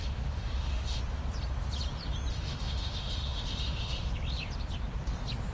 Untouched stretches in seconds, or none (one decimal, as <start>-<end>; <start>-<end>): 1.0-2.3; 4.1-5.5

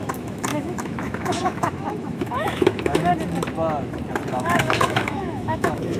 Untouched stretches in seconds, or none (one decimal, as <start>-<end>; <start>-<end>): 3.1-4.3

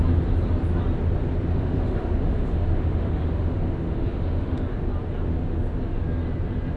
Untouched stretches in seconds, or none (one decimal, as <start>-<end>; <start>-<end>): 0.0-1.5; 4.6-6.8

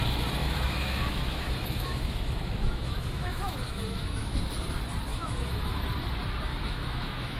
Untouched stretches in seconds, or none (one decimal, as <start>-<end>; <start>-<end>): 0.0-0.4; 4.4-5.1; 5.8-6.5